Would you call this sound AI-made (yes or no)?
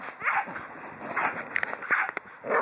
no